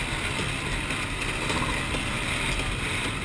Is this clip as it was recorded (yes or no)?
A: yes